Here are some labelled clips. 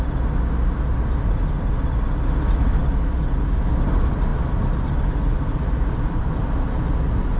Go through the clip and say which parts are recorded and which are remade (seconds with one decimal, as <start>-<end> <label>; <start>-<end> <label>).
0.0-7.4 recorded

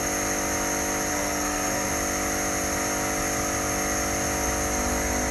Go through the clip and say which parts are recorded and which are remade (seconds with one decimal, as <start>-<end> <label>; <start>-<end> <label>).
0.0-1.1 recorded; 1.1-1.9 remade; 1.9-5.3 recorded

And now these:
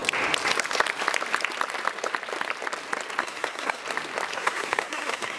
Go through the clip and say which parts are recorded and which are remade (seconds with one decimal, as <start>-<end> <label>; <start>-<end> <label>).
0.0-3.2 recorded; 3.2-3.8 remade; 3.8-4.3 recorded; 4.3-5.4 remade

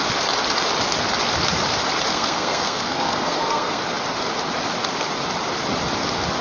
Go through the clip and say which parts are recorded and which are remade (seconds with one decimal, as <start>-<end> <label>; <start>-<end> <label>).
0.0-2.1 recorded; 2.1-3.8 remade; 3.8-6.4 recorded